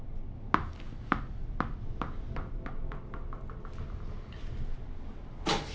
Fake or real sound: real